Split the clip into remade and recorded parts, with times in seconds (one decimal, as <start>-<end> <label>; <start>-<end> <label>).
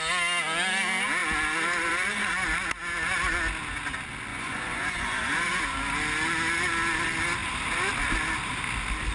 0.0-4.3 recorded; 4.3-5.6 remade; 5.6-9.1 recorded